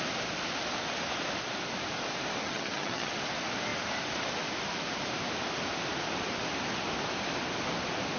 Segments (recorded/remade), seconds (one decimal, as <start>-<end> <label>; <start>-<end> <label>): 0.0-2.4 recorded; 2.4-3.1 remade; 3.1-8.2 recorded